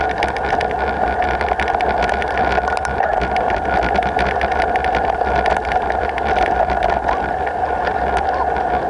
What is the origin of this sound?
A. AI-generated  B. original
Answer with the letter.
B